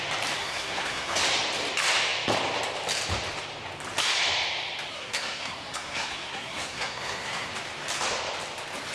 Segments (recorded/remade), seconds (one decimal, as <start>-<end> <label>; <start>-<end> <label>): 0.0-0.4 recorded; 0.4-1.2 remade; 1.2-4.9 recorded; 4.9-7.5 remade; 7.5-8.9 recorded